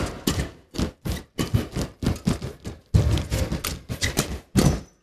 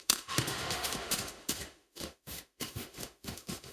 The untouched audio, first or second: first